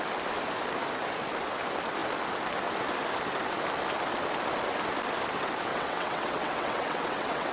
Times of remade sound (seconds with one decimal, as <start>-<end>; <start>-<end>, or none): 5.7-7.5